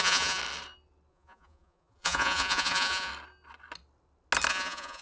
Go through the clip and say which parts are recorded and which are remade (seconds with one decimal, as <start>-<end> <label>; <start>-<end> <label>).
0.0-0.4 remade; 0.4-1.1 recorded; 1.1-3.1 remade; 3.1-4.5 recorded; 4.5-5.0 remade